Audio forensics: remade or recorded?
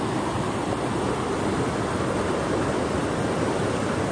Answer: recorded